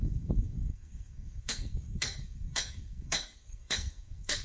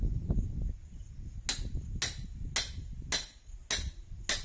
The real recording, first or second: second